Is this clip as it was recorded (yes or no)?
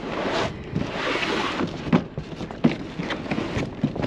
yes